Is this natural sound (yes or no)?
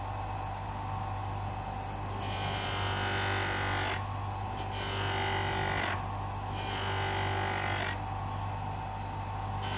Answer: yes